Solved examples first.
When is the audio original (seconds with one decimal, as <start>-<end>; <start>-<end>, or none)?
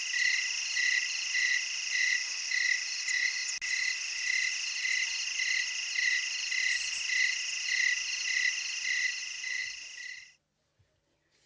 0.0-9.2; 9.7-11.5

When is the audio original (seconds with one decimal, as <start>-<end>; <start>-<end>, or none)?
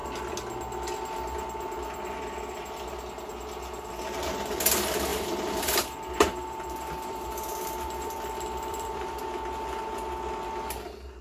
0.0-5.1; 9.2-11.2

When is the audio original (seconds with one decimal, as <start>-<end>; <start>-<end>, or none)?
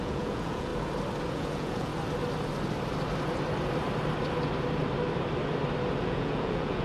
0.7-1.3; 1.9-6.0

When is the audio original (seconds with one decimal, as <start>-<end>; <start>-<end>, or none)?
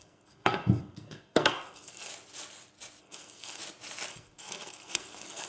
2.1-3.0; 3.6-4.1